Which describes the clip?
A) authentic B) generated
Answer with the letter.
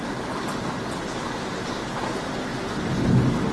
A